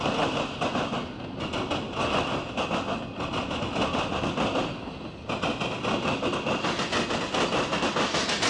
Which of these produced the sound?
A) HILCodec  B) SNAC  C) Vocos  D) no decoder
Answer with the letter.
D